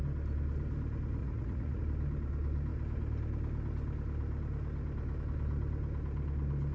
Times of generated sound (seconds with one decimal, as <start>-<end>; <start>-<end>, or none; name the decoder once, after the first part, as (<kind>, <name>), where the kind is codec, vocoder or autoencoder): 1.2-1.8 (vocoder, Vocos)